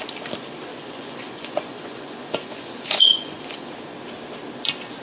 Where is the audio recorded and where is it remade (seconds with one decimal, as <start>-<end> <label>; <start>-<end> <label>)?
0.0-0.7 recorded; 0.7-3.7 remade; 3.7-5.0 recorded